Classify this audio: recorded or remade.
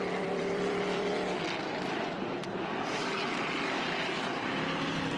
remade